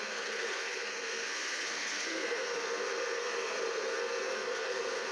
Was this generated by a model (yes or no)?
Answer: yes